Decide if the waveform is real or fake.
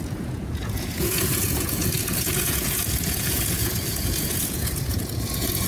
fake